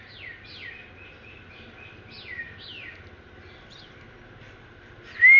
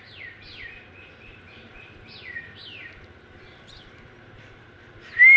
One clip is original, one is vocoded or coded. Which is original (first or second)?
first